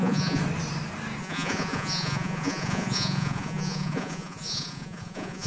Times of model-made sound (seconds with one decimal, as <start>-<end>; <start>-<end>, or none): 0.0-0.4; 1.2-5.5